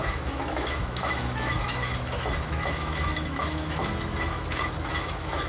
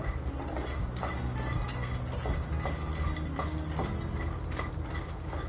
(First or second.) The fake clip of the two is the first